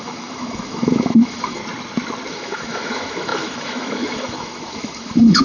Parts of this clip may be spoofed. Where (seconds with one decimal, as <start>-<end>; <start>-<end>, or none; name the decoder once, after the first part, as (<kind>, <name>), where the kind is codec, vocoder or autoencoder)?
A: 0.0-1.6 (autoencoder, DAC-VAE); 2.3-5.4